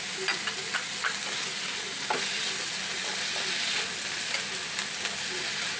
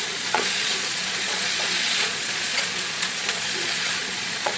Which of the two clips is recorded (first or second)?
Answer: first